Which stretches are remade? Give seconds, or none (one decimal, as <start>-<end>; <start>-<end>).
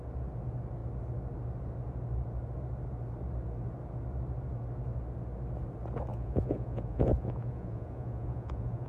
6.1-8.9